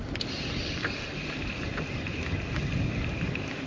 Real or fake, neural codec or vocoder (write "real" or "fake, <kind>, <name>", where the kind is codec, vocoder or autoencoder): real